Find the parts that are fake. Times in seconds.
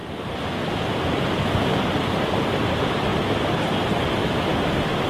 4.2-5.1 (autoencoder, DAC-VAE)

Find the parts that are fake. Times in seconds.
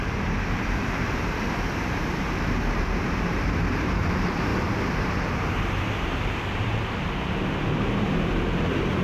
0.0-4.5 (vocoder, BigVGAN v2); 5.9-9.0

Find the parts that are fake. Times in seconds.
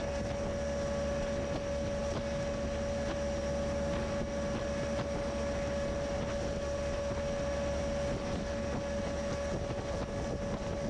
none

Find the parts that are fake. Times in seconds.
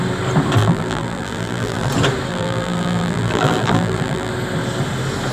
0.6-1.9 (vocoder, BigVGAN v2); 2.3-4.3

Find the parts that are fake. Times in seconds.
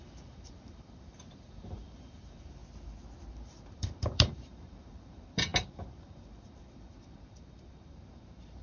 0.0-2.6 (vocoder, BigVGAN v2); 3.3-8.6